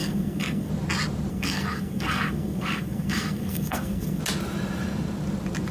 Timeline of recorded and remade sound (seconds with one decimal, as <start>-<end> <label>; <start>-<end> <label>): 0.0-0.7 remade; 0.7-1.3 recorded; 1.3-4.2 remade; 4.2-5.7 recorded